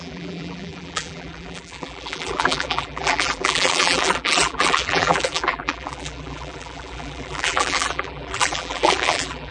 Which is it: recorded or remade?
remade